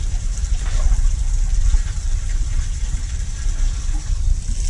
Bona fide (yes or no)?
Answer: yes